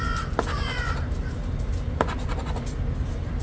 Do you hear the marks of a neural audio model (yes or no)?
no